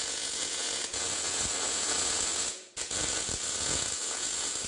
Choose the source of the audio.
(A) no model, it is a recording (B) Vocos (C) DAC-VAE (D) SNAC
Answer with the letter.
B